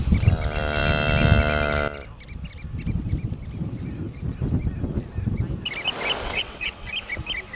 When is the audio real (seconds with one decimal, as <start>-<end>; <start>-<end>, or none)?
0.0-6.2; 6.9-7.6